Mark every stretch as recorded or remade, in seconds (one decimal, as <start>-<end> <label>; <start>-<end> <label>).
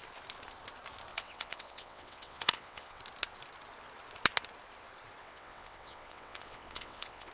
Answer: 0.0-1.1 recorded; 1.1-3.0 remade; 3.0-5.2 recorded; 5.2-7.3 remade